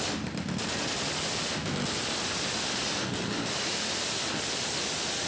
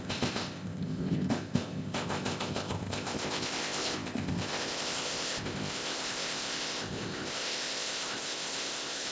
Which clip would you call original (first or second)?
first